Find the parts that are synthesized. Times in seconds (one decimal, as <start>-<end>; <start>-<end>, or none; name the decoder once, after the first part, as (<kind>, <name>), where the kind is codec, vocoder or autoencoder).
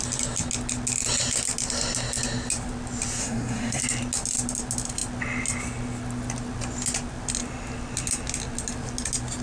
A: 3.2-3.8 (codec, SNAC)